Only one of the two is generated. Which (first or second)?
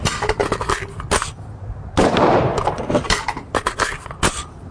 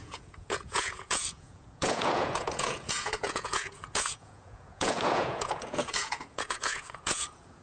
second